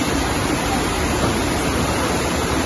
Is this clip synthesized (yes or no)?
yes